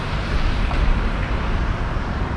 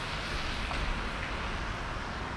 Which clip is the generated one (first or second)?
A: first